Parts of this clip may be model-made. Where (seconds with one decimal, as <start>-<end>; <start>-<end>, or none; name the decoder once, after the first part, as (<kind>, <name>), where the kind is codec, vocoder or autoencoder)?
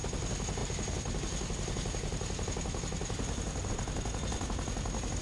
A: none